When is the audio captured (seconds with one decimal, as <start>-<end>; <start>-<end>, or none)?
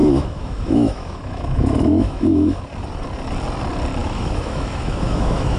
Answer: 2.6-4.0